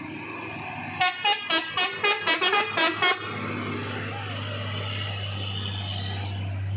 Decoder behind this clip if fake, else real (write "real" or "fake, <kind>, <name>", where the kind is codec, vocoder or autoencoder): real